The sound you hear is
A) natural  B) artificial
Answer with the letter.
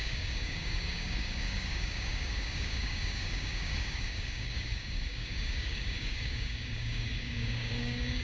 B